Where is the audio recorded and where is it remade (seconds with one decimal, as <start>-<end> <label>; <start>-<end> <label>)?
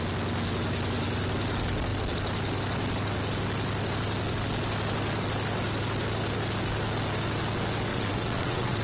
0.0-7.9 recorded; 7.9-8.8 remade